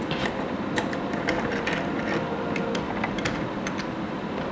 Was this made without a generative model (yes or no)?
yes